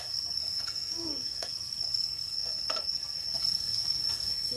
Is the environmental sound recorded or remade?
remade